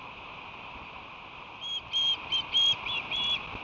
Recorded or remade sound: recorded